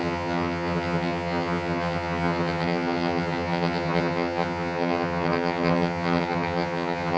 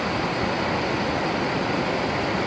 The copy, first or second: first